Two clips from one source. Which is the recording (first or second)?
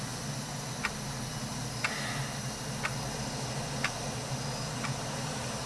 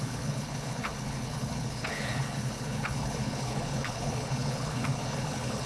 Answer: first